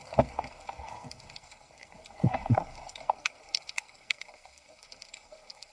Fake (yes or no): yes